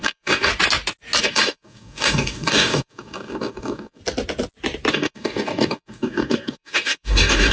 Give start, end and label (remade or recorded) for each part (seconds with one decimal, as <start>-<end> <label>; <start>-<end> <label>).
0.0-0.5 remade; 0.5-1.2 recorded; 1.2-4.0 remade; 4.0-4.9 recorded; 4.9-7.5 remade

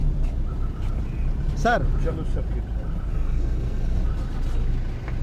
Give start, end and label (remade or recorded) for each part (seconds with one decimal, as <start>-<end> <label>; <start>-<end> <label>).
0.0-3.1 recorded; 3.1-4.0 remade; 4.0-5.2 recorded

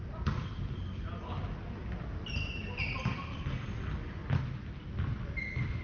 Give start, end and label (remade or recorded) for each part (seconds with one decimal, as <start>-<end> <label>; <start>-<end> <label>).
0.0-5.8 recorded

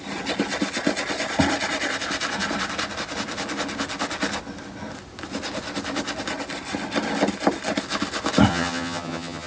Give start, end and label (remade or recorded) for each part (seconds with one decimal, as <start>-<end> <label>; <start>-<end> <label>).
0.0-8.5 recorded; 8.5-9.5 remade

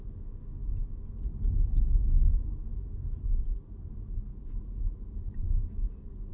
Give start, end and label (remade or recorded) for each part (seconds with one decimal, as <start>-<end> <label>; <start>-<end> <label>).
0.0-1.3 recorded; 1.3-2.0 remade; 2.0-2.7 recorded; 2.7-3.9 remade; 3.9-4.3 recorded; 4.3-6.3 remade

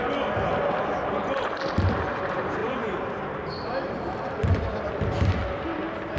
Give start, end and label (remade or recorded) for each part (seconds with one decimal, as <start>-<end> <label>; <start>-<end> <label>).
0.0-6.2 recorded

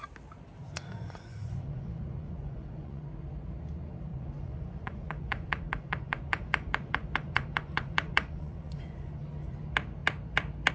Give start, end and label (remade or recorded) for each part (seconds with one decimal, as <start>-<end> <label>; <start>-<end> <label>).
0.0-0.6 recorded; 0.6-3.0 remade; 3.0-4.1 recorded; 4.1-9.1 remade; 9.1-10.7 recorded

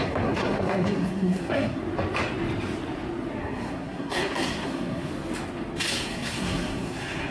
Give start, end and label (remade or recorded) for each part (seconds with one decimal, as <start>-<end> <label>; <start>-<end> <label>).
0.0-1.8 remade; 1.8-3.4 recorded; 3.4-5.1 remade; 5.1-5.9 recorded; 5.9-7.3 remade